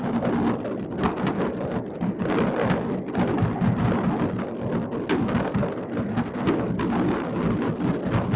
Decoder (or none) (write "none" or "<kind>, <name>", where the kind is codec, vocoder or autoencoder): none